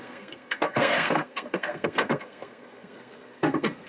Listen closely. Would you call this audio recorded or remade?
remade